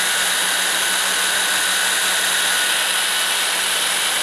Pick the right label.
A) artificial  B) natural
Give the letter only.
B